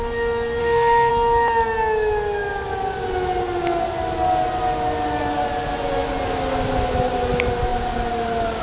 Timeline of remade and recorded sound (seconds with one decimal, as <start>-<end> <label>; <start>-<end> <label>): 0.0-0.6 recorded; 0.6-1.1 remade; 1.1-8.6 recorded